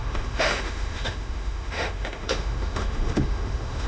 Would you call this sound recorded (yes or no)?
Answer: no